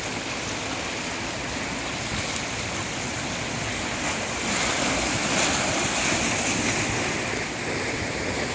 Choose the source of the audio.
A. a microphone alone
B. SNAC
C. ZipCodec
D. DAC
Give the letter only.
A